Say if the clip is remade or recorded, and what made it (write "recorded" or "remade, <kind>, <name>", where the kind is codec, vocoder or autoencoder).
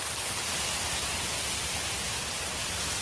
remade, vocoder, BigVGAN v2